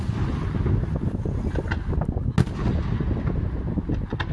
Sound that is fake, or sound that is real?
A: real